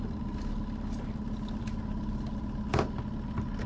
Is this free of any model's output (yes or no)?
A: yes